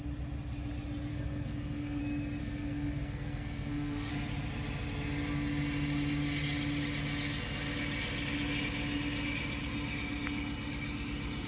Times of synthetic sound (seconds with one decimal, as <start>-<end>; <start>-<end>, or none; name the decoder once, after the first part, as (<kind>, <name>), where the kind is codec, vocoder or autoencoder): 1.1-2.0 (codec, SNAC); 2.4-4.1